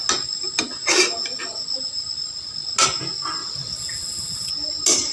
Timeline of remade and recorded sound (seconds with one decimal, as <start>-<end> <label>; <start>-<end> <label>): 0.0-3.4 recorded; 3.4-4.5 remade; 4.5-5.1 recorded